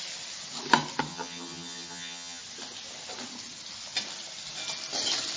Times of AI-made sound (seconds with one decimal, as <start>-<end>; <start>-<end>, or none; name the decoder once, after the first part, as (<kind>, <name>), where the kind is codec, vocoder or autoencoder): 1.1-2.4 (vocoder, HiFi-GAN)